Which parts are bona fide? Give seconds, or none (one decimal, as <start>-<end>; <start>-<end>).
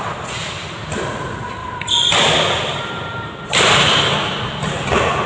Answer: 0.0-1.6; 4.4-5.3